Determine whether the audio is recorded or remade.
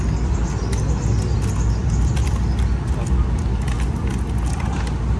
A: recorded